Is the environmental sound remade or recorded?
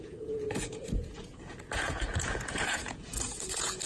remade